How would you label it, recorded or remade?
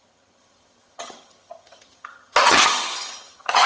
remade